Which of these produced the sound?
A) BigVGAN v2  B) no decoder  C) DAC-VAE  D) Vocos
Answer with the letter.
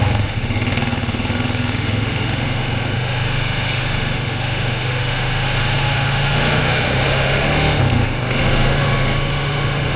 C